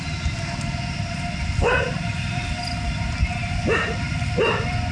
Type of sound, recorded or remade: recorded